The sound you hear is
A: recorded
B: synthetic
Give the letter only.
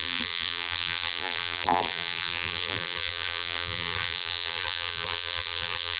B